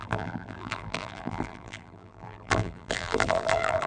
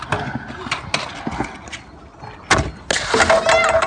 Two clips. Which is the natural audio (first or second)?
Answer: second